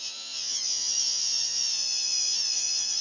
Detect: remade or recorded remade